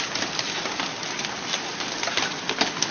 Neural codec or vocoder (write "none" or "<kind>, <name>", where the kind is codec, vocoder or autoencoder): none